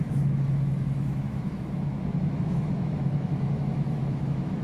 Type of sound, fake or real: fake